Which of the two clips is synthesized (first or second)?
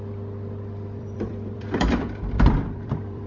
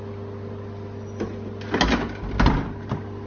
first